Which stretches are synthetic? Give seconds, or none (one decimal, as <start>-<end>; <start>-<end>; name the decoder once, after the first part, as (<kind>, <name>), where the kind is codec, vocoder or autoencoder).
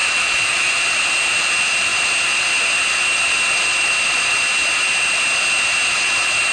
0.0-0.7 (autoencoder, DAC-VAE)